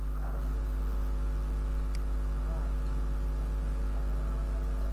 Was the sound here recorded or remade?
recorded